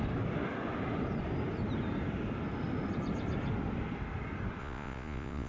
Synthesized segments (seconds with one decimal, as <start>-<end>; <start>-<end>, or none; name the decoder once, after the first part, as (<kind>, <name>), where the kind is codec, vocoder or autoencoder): 4.6-5.5 (vocoder, Vocos)